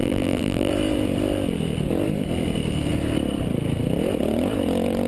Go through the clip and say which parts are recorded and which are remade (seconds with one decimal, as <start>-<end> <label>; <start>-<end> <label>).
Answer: 0.0-0.7 remade; 0.7-5.1 recorded